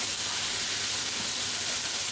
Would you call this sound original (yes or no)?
yes